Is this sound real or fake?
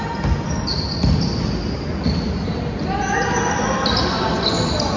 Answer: real